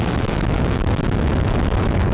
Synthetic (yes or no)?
yes